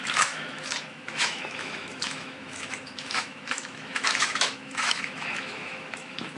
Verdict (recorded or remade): remade